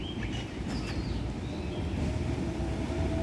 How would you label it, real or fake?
real